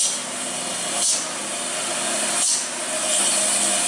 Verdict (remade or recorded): recorded